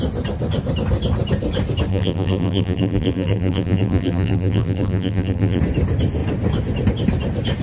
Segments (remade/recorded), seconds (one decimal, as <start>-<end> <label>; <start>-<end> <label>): 0.0-1.9 recorded; 1.9-5.6 remade; 5.6-7.6 recorded